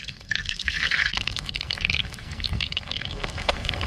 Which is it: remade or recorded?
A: remade